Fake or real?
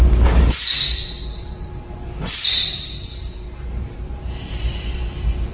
fake